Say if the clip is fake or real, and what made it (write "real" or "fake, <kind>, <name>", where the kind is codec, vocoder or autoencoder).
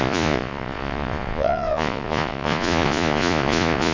fake, vocoder, Vocos